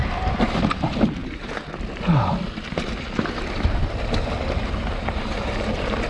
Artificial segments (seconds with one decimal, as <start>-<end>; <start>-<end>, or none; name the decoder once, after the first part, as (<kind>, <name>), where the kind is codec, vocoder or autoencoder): 0.0-6.1 (vocoder, BigVGAN v2)